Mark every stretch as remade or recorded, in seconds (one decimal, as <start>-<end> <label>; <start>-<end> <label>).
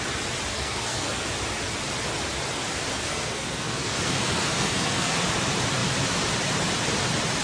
0.0-0.5 recorded; 0.5-1.3 remade; 1.3-3.0 recorded; 3.0-5.1 remade; 5.1-7.4 recorded